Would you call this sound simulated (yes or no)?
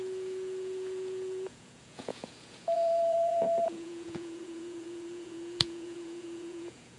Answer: yes